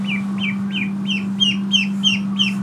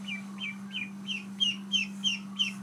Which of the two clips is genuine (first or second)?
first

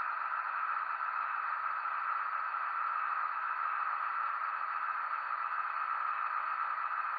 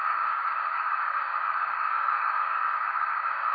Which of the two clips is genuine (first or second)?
first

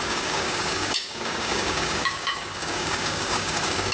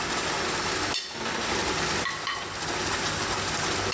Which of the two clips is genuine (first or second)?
second